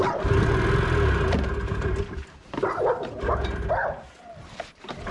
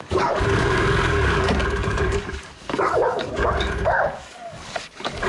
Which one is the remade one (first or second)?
second